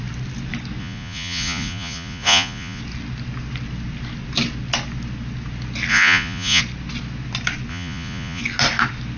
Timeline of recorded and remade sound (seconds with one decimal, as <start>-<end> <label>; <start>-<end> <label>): 0.0-0.8 recorded; 0.8-2.8 remade; 2.8-5.9 recorded; 5.9-6.6 remade; 6.6-7.7 recorded; 7.7-8.4 remade; 8.4-9.2 recorded